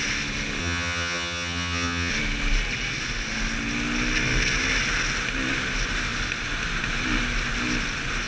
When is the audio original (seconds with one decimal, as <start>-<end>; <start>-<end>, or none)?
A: 0.0-0.6; 2.1-8.3